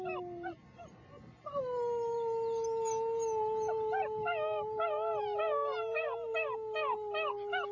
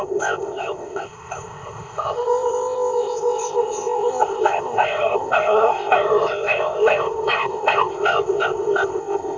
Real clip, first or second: first